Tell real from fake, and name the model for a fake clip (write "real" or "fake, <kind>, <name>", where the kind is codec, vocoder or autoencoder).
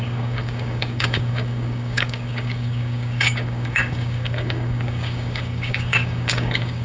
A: fake, codec, DAC